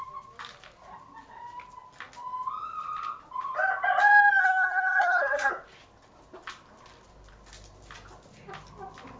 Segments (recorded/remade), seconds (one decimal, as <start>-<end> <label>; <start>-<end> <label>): 0.0-4.4 recorded; 4.4-5.5 remade; 5.5-9.2 recorded